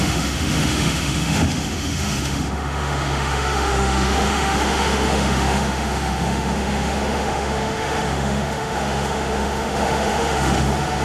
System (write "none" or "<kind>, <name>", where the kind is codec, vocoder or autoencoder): autoencoder, DAC-VAE